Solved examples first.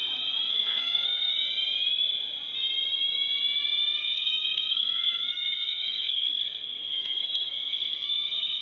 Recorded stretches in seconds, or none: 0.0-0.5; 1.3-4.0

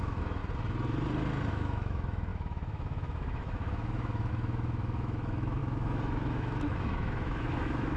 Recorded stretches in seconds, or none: 0.4-1.5